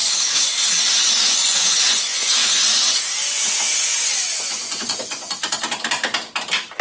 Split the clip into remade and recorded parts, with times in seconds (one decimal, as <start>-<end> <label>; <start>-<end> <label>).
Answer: 0.0-0.7 remade; 0.7-1.4 recorded; 1.4-5.5 remade; 5.5-6.8 recorded